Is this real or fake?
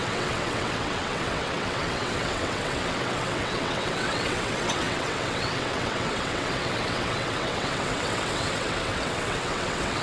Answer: fake